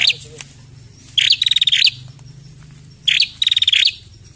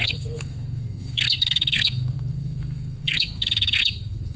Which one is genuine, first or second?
first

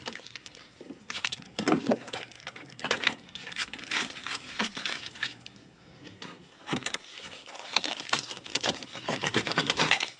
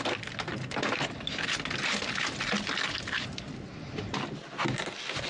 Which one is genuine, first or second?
second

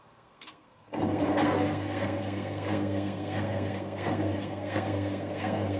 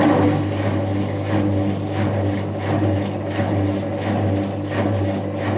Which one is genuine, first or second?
second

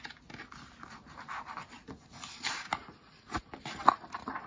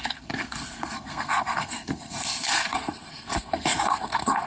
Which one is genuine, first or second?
first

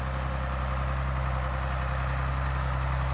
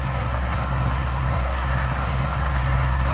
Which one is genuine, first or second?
first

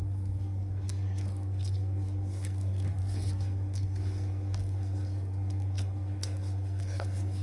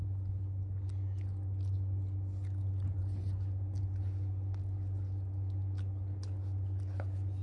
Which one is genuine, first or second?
second